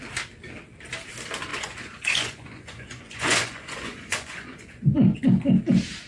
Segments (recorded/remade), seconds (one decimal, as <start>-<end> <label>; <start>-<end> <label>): 0.0-1.5 recorded; 1.5-5.2 remade; 5.2-6.1 recorded